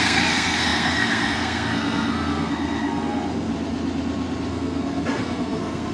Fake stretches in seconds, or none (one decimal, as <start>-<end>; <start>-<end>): 0.0-3.5; 4.5-5.9